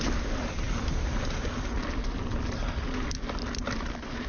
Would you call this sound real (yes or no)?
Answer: yes